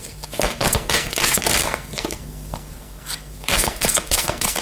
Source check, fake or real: fake